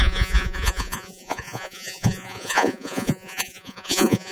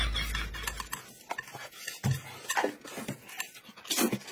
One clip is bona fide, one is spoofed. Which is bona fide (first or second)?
second